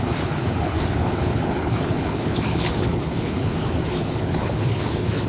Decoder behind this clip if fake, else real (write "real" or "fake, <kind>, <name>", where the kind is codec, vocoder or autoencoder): fake, codec, HILCodec